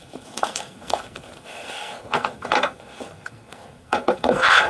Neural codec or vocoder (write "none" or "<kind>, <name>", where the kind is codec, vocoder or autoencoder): codec, SNAC